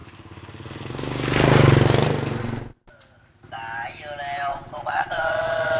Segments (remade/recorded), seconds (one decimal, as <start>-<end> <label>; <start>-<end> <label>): 0.0-4.5 recorded; 4.5-5.8 remade